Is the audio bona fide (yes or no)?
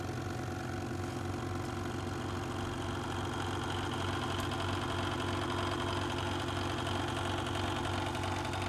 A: yes